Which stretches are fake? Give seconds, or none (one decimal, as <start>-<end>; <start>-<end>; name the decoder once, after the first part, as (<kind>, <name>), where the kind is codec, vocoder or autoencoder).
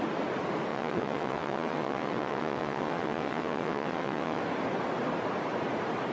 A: 0.7-4.4 (vocoder, WaveNeXt)